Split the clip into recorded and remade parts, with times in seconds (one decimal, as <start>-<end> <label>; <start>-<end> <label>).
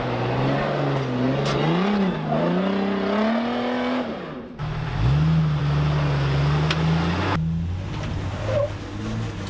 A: 0.0-9.5 recorded